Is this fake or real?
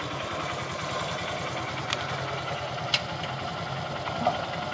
real